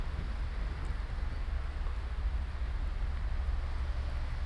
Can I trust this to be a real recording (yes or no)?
yes